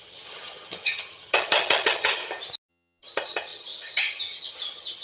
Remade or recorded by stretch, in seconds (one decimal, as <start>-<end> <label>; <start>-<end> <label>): 0.0-2.2 remade; 2.2-2.7 recorded; 2.7-5.0 remade